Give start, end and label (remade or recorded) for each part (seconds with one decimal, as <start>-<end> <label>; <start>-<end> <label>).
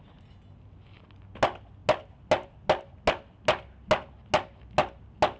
0.0-5.4 recorded